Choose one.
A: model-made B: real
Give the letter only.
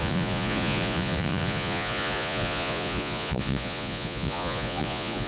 A